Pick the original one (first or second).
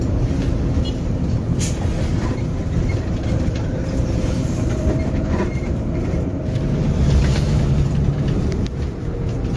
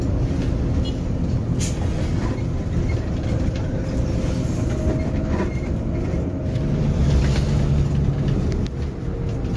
second